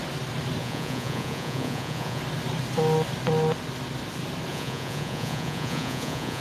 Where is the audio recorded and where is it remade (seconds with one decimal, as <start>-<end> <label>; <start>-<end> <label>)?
0.0-0.6 recorded; 0.6-2.2 remade; 2.2-4.5 recorded; 4.5-6.4 remade